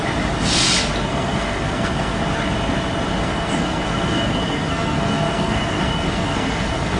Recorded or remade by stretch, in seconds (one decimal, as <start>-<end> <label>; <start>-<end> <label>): 0.0-1.1 recorded; 1.1-2.2 remade; 2.2-3.2 recorded; 3.2-7.0 remade